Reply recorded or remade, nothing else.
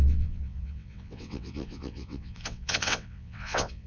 remade